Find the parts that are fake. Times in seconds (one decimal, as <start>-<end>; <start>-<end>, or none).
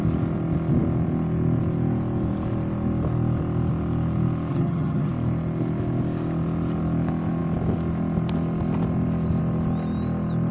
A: 4.5-5.1